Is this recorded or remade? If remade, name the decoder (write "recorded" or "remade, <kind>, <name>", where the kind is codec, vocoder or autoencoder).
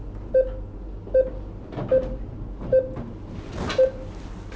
recorded